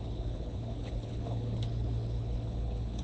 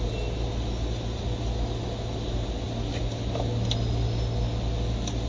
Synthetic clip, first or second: first